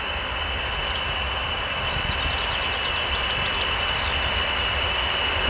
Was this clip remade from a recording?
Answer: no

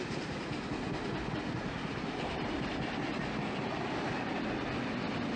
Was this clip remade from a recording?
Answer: no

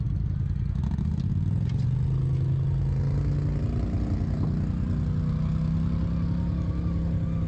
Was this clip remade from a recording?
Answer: no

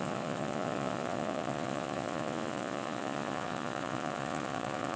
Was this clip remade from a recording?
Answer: yes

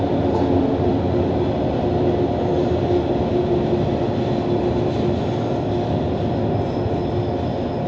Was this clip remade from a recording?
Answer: no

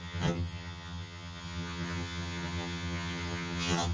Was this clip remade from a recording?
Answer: yes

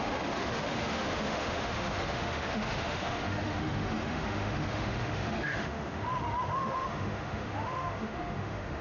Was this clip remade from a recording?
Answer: yes